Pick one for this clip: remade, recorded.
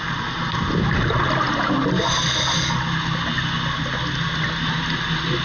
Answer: recorded